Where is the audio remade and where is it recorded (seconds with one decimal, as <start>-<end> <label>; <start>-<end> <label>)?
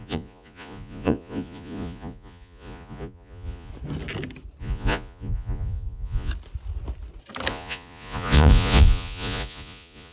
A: 0.0-3.7 remade; 3.7-4.6 recorded; 4.6-6.3 remade; 6.3-7.5 recorded; 7.5-10.1 remade